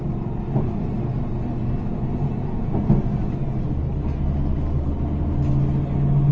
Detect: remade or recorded recorded